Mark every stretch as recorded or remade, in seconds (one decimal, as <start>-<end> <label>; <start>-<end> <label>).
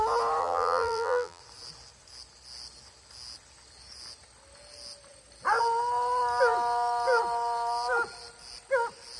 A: 0.0-0.4 recorded; 0.4-1.4 remade; 1.4-9.2 recorded